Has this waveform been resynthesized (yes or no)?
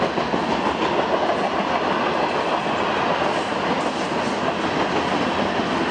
no